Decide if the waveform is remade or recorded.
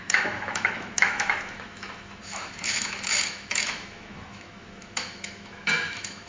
remade